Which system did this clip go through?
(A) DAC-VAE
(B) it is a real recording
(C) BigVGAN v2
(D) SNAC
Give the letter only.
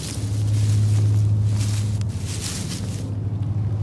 B